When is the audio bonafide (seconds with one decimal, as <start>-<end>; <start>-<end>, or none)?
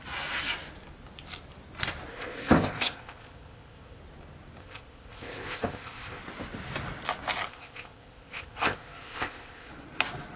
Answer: 0.0-2.1; 4.0-4.6; 6.2-7.5; 9.7-10.4